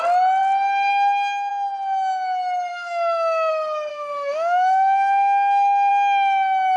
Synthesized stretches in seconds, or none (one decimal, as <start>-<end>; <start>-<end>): 2.7-3.5; 3.9-5.9